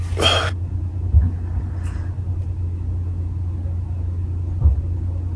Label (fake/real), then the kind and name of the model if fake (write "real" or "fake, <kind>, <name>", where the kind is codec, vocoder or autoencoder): real